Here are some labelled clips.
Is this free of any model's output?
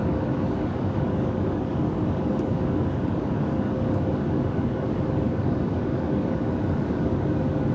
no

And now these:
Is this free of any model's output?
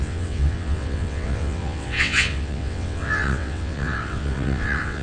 no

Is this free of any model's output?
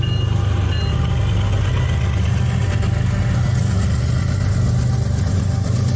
yes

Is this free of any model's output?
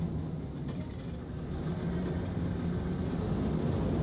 yes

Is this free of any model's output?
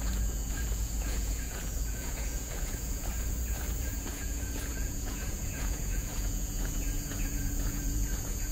no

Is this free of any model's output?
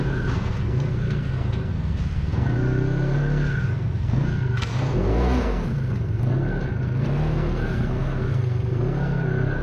no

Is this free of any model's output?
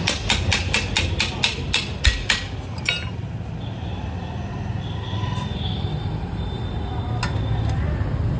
yes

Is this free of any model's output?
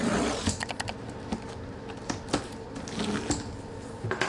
yes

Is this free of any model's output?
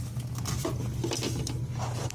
yes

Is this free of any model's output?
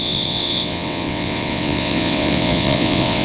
no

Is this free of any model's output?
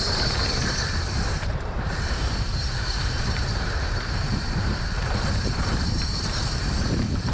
no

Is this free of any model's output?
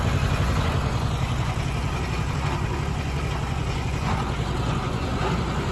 no